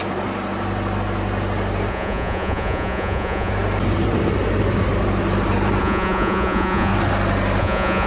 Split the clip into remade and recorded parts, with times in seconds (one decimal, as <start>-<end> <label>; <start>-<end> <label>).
0.0-1.9 recorded; 1.9-3.5 remade; 3.5-5.8 recorded; 5.8-6.9 remade; 6.9-7.6 recorded; 7.6-8.1 remade